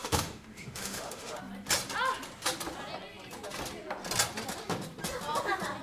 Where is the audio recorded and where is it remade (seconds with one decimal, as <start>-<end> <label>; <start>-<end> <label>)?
0.0-1.4 remade; 1.4-5.8 recorded